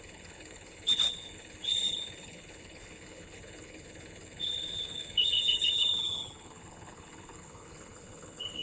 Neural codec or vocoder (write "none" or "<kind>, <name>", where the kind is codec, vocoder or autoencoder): codec, HILCodec